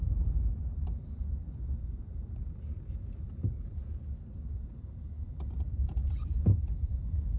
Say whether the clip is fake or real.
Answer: fake